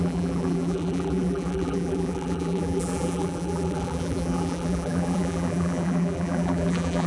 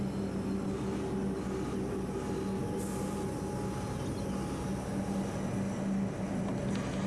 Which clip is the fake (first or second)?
first